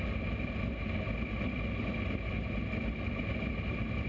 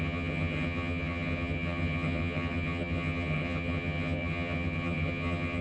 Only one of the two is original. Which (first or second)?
first